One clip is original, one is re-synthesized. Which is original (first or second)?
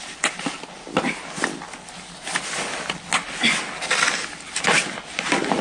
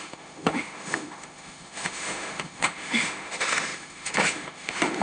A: first